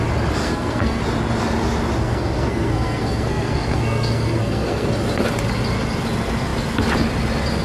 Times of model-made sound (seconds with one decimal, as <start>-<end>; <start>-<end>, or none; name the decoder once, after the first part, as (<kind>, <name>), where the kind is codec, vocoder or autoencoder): 0.4-1.0 (codec, SNAC); 2.0-4.9